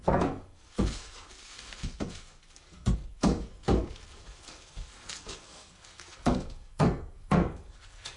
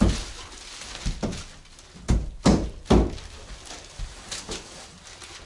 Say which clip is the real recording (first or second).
second